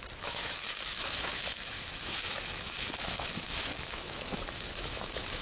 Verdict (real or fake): fake